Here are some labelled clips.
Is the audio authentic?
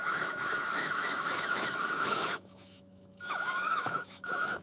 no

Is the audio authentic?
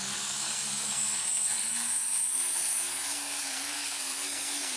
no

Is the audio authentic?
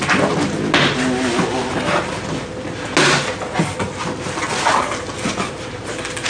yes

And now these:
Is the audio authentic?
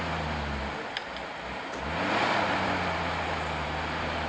yes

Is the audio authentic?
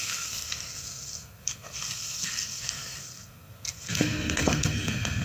no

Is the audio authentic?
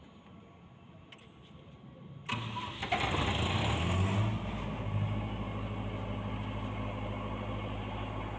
yes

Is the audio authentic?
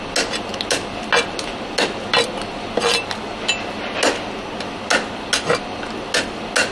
yes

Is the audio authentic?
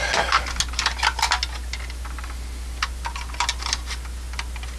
yes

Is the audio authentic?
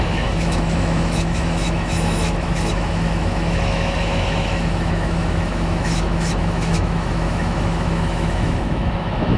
no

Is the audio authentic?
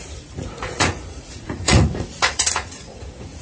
no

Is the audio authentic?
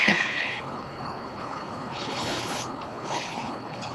no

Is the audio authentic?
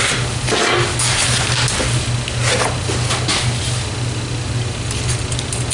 yes